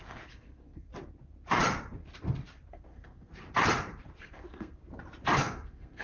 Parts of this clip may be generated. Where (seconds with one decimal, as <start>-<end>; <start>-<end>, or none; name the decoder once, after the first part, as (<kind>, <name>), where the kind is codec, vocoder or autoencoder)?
0.0-0.9 (codec, SNAC); 2.7-3.3; 4.2-4.8; 5.4-6.0